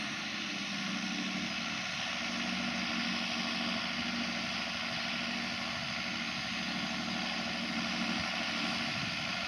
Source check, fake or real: real